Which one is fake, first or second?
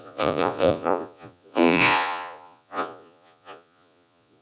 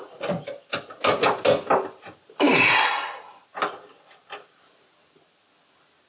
first